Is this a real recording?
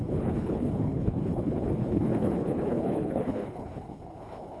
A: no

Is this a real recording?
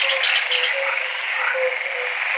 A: yes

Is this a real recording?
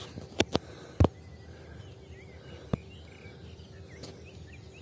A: yes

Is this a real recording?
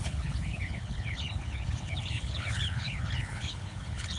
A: no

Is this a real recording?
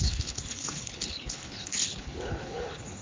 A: no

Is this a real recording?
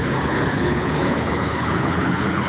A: no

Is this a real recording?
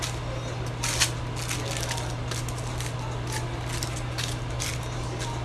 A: yes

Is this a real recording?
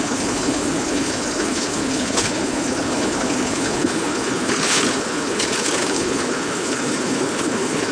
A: no